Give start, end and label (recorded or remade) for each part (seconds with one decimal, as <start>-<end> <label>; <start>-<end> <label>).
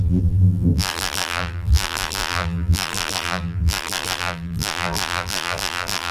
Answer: 0.0-6.1 remade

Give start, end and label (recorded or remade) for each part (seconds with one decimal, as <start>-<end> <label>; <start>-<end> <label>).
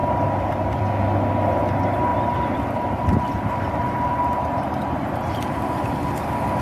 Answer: 0.0-0.8 remade; 0.8-2.1 recorded; 2.1-6.1 remade; 6.1-6.6 recorded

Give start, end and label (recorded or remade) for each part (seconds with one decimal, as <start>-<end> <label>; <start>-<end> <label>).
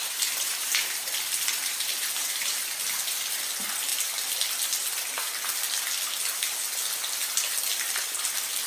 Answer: 0.0-1.1 remade; 1.1-1.6 recorded; 1.6-2.5 remade; 2.5-8.7 recorded